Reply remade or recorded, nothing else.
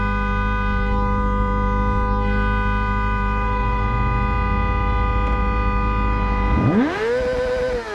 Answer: recorded